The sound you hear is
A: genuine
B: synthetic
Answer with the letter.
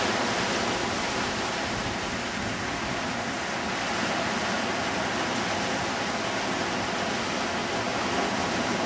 A